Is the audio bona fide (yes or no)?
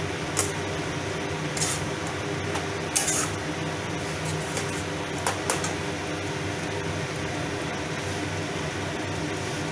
yes